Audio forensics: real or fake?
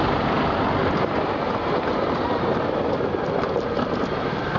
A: real